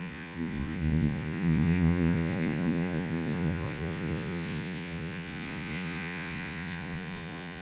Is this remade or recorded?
remade